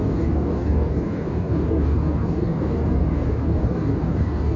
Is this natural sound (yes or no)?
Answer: no